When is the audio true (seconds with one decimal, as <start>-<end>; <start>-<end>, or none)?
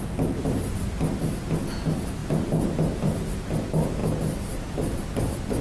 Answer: 0.0-2.2; 3.3-4.0; 4.6-5.6